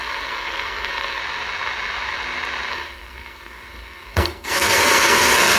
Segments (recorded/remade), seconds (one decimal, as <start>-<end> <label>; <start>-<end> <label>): 0.0-1.2 remade; 1.2-2.7 recorded; 2.7-5.6 remade